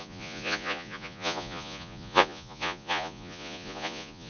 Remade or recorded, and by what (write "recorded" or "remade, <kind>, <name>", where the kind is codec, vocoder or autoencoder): remade, vocoder, Vocos